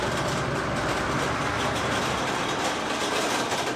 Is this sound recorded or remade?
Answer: recorded